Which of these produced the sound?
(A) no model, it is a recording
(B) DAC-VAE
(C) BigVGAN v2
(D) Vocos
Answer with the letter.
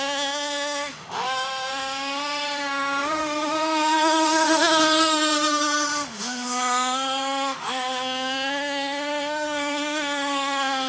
B